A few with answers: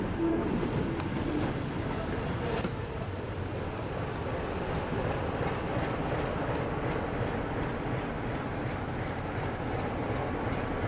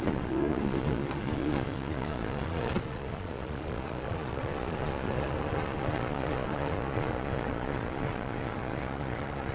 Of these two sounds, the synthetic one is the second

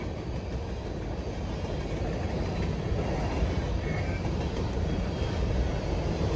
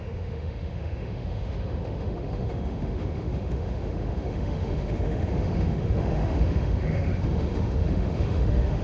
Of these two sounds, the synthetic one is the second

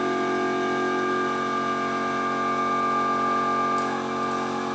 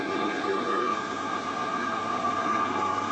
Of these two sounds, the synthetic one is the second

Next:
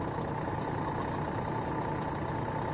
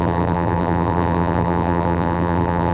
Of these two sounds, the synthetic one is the second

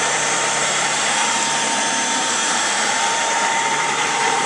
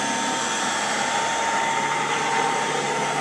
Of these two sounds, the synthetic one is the first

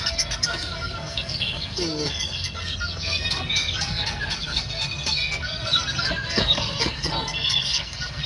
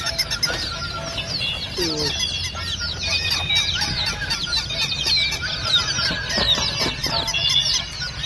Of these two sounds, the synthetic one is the first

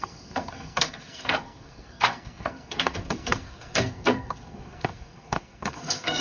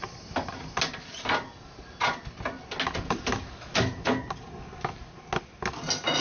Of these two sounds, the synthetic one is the first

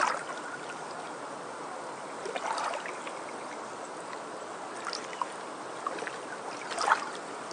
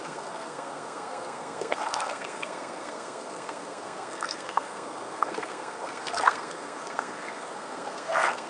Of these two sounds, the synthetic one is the second